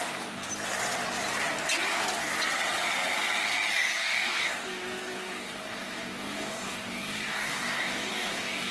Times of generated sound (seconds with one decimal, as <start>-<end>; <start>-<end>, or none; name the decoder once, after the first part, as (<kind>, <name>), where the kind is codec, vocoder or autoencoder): 0.0-0.5 (codec, DAC); 3.7-8.7